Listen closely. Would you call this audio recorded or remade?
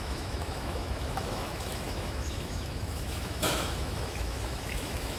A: remade